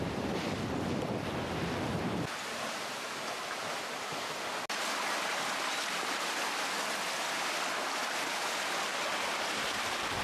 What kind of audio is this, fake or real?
real